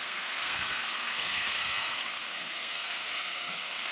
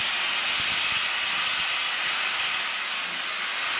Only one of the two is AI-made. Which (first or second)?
first